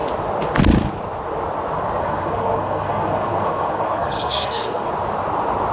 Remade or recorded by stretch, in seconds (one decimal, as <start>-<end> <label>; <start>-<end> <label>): 0.0-2.0 recorded; 2.0-4.9 remade; 4.9-5.7 recorded